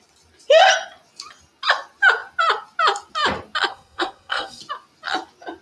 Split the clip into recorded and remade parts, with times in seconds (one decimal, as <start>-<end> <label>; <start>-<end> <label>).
0.0-3.7 recorded; 3.7-4.6 remade; 4.6-5.6 recorded